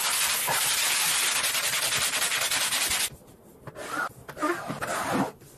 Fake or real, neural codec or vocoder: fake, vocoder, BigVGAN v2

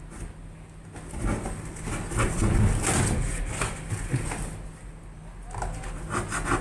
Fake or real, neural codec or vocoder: real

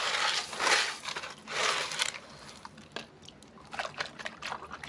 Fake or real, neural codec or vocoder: real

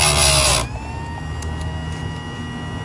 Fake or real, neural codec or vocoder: real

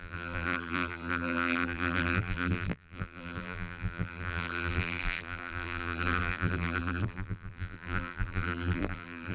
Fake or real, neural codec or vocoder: fake, vocoder, BigVGAN v2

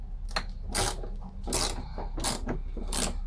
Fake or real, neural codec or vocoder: real